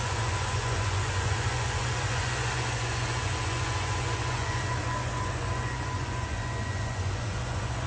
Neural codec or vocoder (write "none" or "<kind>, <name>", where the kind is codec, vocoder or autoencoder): vocoder, Vocos